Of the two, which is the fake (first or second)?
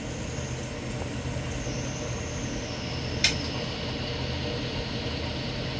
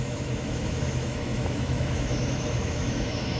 second